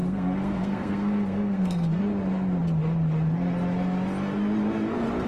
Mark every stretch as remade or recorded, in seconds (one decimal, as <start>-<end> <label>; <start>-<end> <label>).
0.0-2.0 remade; 2.0-5.3 recorded